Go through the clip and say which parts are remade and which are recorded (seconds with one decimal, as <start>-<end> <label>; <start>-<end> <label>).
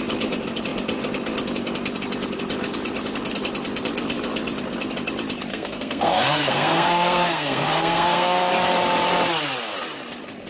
0.0-5.5 recorded; 5.5-8.5 remade; 8.5-10.5 recorded